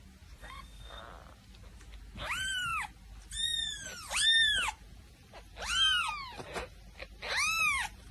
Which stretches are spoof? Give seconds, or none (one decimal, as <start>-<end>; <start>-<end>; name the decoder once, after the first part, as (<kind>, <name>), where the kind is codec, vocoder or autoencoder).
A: 0.4-1.0 (codec, SNAC)